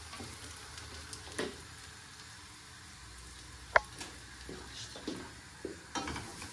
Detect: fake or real real